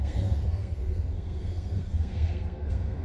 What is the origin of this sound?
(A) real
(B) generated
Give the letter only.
B